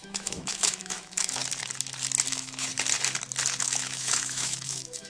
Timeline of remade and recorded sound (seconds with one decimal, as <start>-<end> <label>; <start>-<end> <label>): 0.0-1.4 remade; 1.4-2.3 recorded; 2.3-2.7 remade; 2.7-3.6 recorded; 3.6-5.1 remade